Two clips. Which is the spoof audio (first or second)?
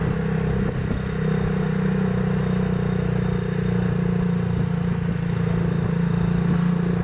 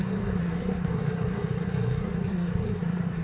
second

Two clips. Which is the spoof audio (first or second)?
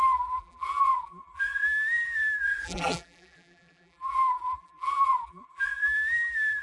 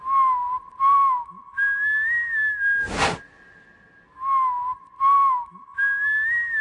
first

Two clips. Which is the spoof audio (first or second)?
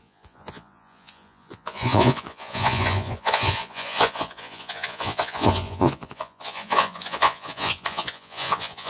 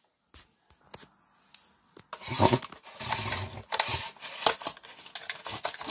first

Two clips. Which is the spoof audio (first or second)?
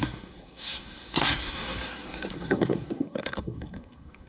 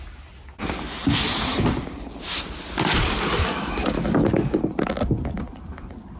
first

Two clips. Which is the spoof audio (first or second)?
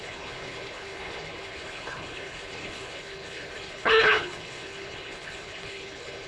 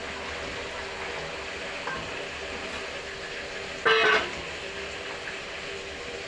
first